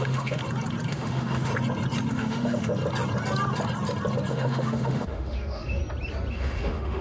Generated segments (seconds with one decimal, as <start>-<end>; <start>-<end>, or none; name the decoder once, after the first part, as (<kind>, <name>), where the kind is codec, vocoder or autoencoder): 0.0-0.4 (autoencoder, DAC-VAE); 0.9-1.5; 2.1-2.7; 4.3-5.8; 6.3-7.0